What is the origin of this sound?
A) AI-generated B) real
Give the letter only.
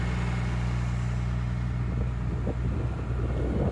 B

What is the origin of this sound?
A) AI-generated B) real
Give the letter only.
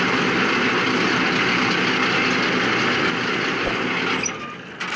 B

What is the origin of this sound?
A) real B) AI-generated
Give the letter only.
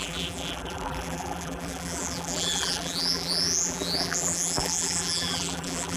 B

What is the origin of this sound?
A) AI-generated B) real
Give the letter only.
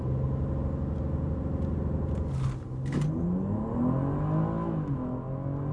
B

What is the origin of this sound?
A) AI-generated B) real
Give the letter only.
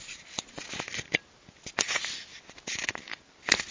B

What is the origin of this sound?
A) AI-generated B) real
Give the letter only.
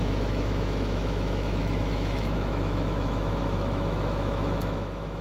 A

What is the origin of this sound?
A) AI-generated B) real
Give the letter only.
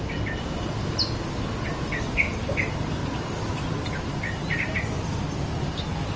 B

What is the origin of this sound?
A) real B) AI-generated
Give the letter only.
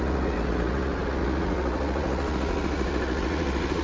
B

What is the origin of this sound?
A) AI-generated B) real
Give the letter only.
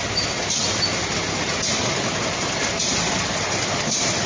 B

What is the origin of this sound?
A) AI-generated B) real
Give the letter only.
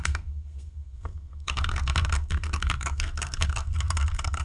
A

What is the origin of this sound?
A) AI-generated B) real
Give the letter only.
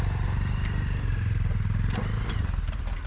B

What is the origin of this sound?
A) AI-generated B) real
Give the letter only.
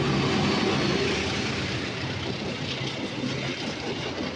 B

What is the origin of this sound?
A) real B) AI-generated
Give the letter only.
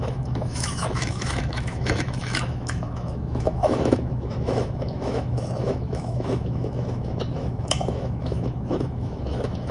B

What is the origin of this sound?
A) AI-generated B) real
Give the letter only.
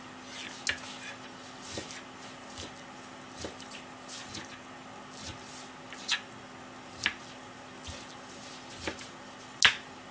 B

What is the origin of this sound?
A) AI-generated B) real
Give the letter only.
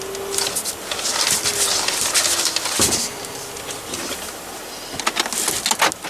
B